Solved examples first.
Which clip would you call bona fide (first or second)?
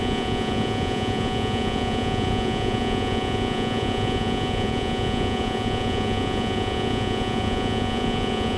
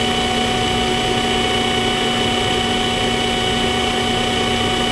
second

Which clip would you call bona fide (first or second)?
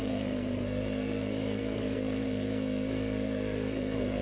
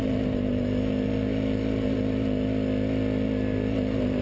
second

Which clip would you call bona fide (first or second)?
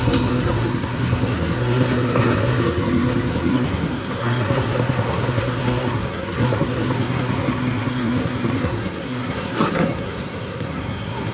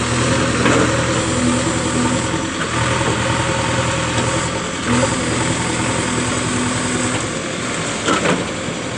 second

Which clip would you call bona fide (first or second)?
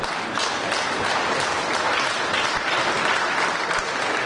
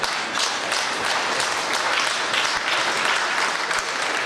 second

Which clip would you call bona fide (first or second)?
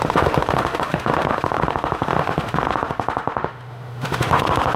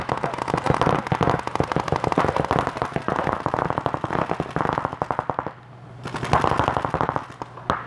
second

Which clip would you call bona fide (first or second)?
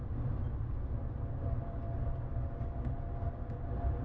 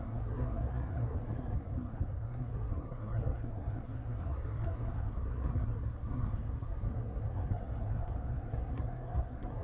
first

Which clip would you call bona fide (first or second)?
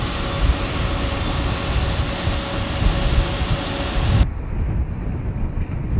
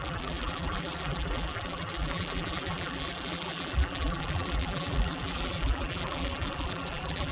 first